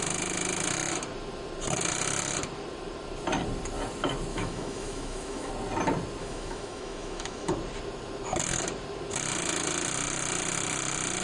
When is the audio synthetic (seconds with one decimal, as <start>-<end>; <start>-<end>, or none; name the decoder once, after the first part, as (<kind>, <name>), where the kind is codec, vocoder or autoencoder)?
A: 4.3-5.5 (autoencoder, DAC-VAE); 6.2-7.5